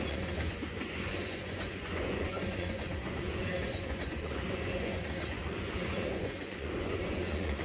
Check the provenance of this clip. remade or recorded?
remade